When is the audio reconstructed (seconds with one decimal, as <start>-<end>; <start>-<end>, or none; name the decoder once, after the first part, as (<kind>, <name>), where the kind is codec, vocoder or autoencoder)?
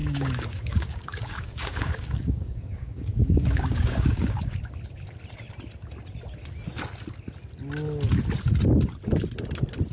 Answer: 0.0-4.4 (codec, DAC)